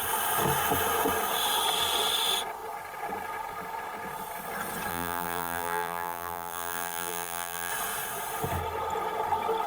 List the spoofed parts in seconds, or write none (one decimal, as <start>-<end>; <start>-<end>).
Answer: 4.9-7.7